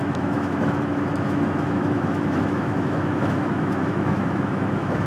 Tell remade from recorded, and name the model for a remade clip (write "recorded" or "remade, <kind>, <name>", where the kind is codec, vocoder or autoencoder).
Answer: remade, autoencoder, DAC-VAE